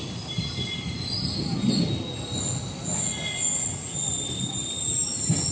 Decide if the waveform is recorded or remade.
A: recorded